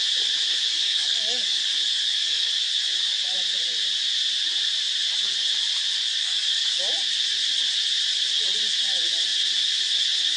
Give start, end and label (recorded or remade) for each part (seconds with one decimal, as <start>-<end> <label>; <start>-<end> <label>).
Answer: 0.0-0.7 recorded; 0.7-2.5 remade; 2.5-6.2 recorded; 6.2-6.8 remade; 6.8-10.4 recorded